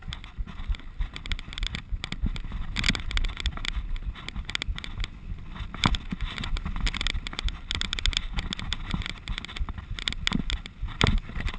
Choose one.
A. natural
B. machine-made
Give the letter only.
A